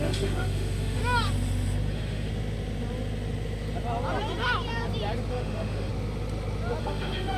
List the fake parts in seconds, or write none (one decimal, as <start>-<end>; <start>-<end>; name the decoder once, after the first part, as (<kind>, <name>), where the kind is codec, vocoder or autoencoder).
0.0-1.0 (autoencoder, DAC-VAE); 1.9-2.3; 5.3-5.9; 6.8-7.4